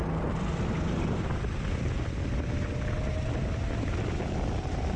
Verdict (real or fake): real